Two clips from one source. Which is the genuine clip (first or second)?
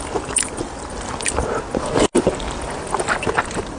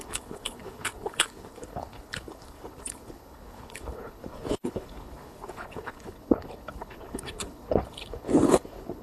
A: first